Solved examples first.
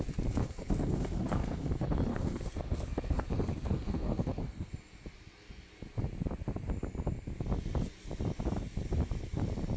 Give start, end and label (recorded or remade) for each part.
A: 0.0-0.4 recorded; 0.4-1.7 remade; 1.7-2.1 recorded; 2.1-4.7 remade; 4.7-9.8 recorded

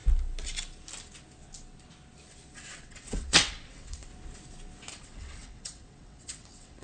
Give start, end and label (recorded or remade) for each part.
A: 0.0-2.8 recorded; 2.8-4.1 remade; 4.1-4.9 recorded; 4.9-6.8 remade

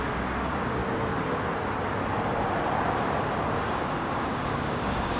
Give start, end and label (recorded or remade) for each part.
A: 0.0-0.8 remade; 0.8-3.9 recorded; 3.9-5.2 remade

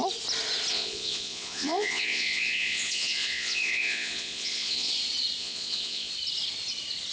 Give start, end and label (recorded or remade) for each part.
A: 0.0-0.7 recorded; 0.7-4.9 remade; 4.9-5.4 recorded; 5.4-6.1 remade; 6.1-7.1 recorded

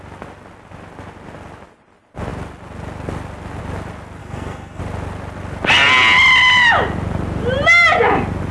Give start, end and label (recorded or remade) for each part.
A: 0.0-4.2 recorded; 4.2-4.8 remade; 4.8-8.5 recorded

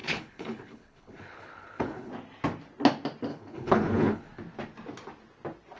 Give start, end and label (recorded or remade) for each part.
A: 0.0-2.1 remade; 2.1-3.3 recorded; 3.3-4.3 remade; 4.3-5.8 recorded

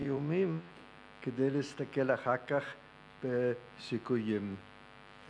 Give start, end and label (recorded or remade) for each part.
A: 0.0-0.7 remade; 0.7-5.3 recorded